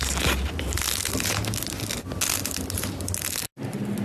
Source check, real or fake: real